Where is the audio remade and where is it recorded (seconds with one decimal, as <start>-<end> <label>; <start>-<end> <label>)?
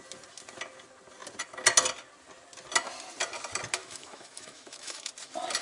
0.0-3.8 recorded; 3.8-5.1 remade; 5.1-5.6 recorded